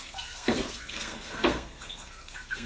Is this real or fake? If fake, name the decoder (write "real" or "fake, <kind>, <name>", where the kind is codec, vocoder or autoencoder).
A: fake, codec, SNAC